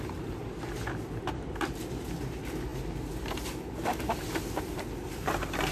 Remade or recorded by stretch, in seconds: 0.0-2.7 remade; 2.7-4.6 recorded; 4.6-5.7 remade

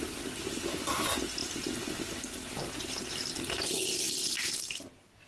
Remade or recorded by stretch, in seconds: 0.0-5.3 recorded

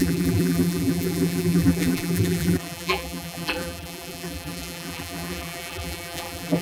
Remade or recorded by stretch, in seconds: 0.0-6.6 remade

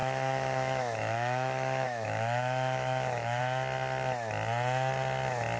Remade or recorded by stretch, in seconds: 0.0-3.4 remade; 3.4-5.6 recorded

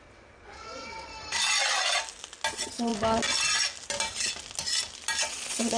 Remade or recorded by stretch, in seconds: 0.0-1.1 remade; 1.1-2.5 recorded; 2.5-2.9 remade; 2.9-5.2 recorded; 5.2-5.8 remade

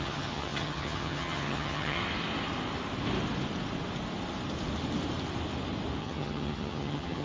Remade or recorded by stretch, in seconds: 0.0-2.0 remade; 2.0-6.0 recorded; 6.0-7.2 remade